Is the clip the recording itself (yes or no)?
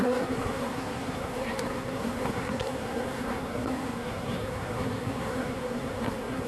no